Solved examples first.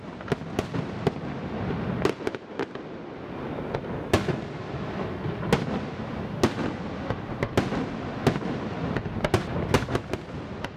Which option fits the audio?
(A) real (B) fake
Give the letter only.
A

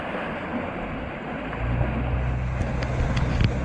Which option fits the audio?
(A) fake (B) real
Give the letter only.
B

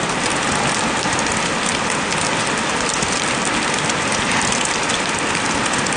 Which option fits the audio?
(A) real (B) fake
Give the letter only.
A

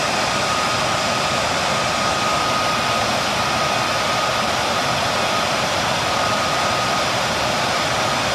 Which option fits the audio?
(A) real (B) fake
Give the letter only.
A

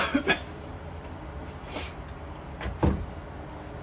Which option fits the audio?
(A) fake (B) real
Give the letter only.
B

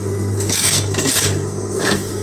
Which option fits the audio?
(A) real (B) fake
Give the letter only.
B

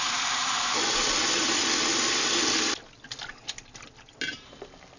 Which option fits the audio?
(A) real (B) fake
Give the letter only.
A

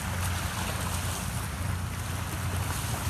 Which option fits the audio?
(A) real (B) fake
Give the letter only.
A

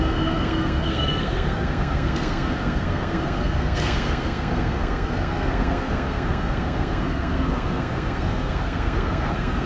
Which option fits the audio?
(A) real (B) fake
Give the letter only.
B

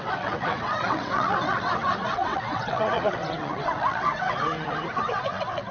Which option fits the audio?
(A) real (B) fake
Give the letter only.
B